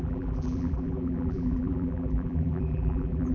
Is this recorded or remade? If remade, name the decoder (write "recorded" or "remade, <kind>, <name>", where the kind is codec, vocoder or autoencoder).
remade, vocoder, BigVGAN v2